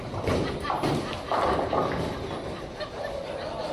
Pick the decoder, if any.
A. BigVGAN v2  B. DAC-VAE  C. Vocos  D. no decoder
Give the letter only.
A